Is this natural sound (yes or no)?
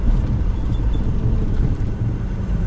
no